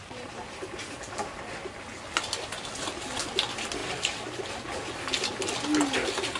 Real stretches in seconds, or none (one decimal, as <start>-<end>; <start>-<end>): 0.7-6.4